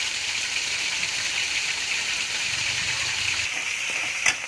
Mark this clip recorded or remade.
remade